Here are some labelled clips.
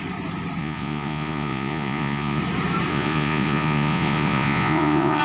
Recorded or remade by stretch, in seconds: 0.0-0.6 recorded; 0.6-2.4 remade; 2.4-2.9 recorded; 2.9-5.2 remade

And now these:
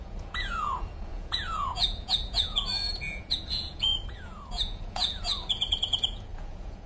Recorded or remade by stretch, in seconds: 0.0-6.9 remade